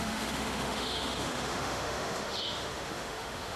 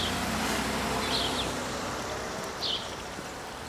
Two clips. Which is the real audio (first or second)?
second